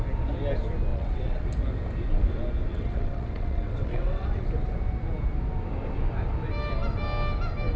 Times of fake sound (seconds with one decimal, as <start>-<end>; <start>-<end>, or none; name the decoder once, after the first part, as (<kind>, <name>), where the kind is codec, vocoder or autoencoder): 0.9-1.5 (vocoder, WaveNeXt); 2.7-4.5